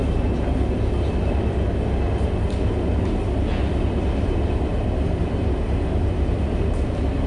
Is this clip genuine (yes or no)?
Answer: yes